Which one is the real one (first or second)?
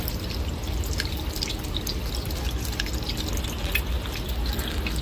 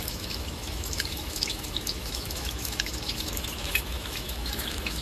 first